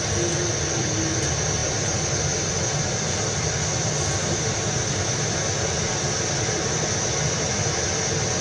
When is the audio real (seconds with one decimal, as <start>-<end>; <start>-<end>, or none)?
0.0-8.4